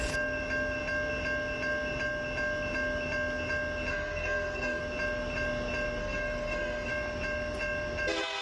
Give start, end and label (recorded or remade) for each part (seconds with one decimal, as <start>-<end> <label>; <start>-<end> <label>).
0.0-3.9 recorded; 3.9-4.8 remade; 4.8-6.0 recorded; 6.0-6.9 remade; 6.9-8.4 recorded